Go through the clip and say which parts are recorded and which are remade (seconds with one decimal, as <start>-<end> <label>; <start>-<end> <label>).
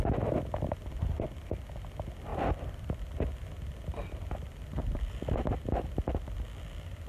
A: 0.0-2.3 recorded; 2.3-3.0 remade; 3.0-7.1 recorded